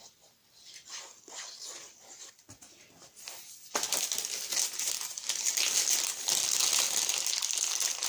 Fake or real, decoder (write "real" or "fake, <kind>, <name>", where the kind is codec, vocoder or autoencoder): real